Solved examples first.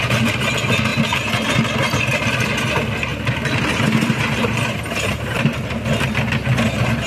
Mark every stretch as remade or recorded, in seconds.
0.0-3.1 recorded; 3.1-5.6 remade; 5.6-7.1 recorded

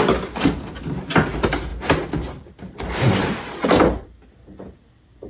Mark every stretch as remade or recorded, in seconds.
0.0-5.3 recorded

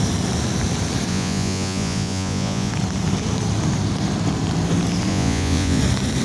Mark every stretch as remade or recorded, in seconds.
0.0-1.1 recorded; 1.1-2.7 remade; 2.7-5.1 recorded; 5.1-5.8 remade; 5.8-6.2 recorded

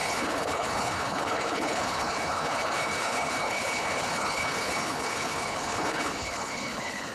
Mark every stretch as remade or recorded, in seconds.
0.0-7.1 remade

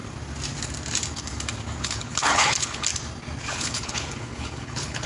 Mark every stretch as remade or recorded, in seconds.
0.0-1.8 recorded; 1.8-2.9 remade; 2.9-3.5 recorded; 3.5-5.1 remade

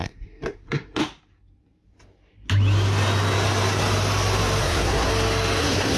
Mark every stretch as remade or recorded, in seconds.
0.0-1.0 remade; 1.0-4.6 recorded; 4.6-5.1 remade; 5.1-5.6 recorded; 5.6-6.0 remade